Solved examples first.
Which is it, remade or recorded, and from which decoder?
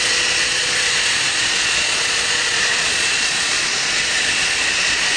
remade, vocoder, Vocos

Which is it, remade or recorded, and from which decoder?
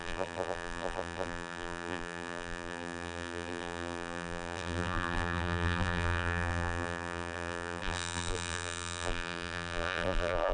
remade, vocoder, BigVGAN v2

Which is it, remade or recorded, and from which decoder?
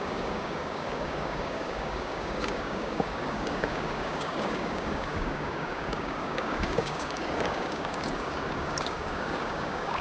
remade, codec, DAC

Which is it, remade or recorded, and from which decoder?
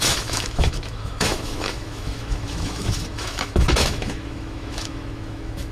remade, autoencoder, DAC-VAE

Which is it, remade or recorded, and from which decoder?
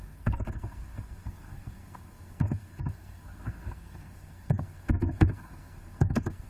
remade, codec, SNAC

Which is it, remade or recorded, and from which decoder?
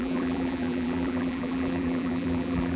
remade, vocoder, BigVGAN v2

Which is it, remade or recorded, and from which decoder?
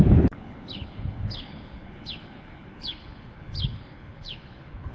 remade, codec, HILCodec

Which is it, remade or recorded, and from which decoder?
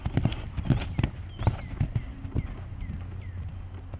recorded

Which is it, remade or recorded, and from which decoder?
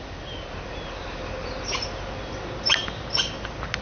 recorded